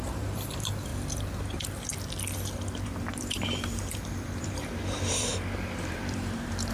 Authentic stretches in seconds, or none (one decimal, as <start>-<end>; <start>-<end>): 0.9-2.8; 5.3-5.8